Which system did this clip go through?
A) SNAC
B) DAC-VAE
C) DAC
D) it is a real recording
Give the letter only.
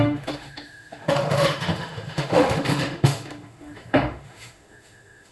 B